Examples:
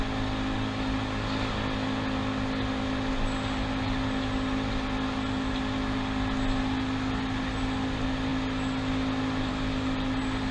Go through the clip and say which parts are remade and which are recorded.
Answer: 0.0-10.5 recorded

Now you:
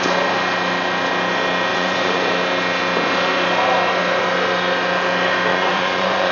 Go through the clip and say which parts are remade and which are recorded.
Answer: 0.0-1.7 recorded; 1.7-2.3 remade; 2.3-5.5 recorded; 5.5-6.3 remade

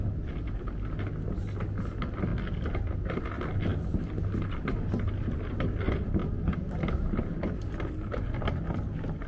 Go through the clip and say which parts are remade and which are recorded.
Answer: 0.0-9.3 recorded

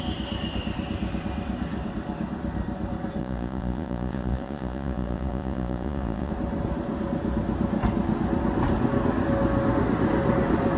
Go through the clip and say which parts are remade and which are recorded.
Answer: 0.0-3.2 recorded; 3.2-6.3 remade; 6.3-10.8 recorded

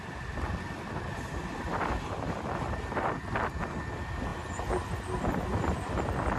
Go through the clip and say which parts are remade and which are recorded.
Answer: 0.0-6.4 recorded